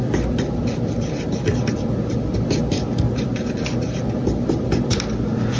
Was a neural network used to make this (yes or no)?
yes